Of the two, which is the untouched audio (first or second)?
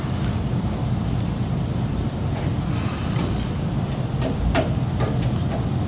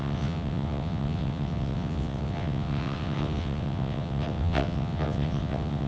first